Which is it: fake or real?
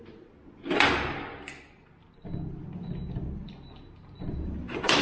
real